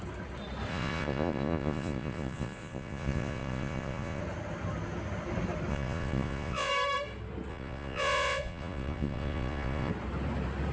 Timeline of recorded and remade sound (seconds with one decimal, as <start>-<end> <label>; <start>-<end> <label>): 0.0-0.7 recorded; 0.7-4.2 remade; 4.2-5.7 recorded; 5.7-6.7 remade; 6.7-7.5 recorded; 7.5-9.9 remade; 9.9-10.7 recorded